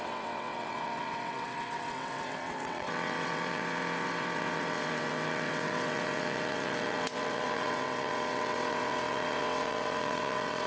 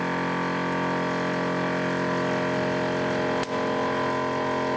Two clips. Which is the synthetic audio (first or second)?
first